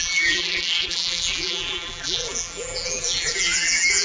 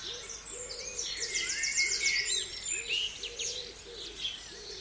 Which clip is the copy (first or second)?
first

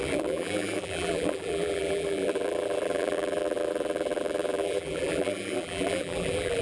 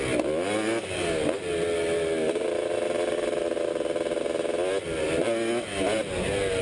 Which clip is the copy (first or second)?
first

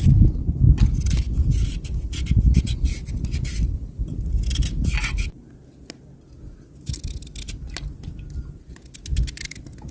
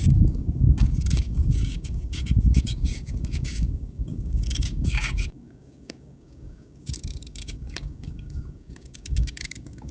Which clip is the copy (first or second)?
second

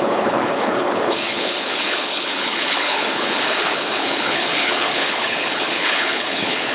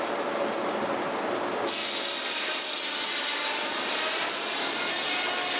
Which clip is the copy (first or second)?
first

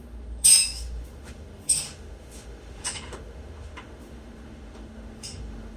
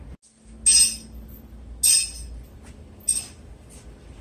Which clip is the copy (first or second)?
first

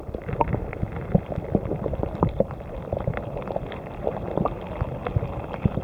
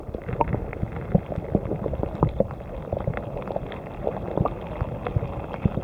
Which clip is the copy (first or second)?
first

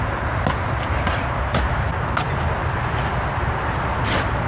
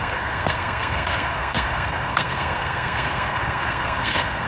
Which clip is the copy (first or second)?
second